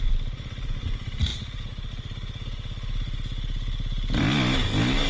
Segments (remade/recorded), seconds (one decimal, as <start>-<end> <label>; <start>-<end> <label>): 0.0-5.1 recorded